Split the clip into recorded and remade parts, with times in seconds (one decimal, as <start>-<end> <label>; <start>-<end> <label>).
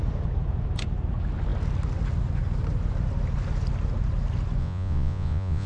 0.0-4.6 recorded; 4.6-5.7 remade